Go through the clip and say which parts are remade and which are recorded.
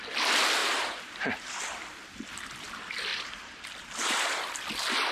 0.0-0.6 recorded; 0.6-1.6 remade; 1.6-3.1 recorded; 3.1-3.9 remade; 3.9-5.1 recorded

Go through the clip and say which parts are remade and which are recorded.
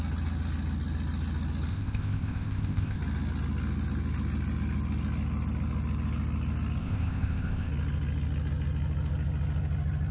0.0-1.7 recorded; 1.7-3.0 remade; 3.0-6.8 recorded; 6.8-7.7 remade; 7.7-10.1 recorded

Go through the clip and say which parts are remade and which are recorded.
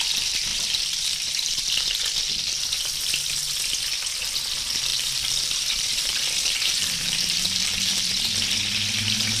0.0-0.5 recorded; 0.5-1.6 remade; 1.6-4.9 recorded; 4.9-8.0 remade; 8.0-9.4 recorded